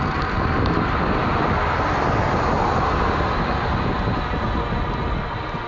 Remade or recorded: recorded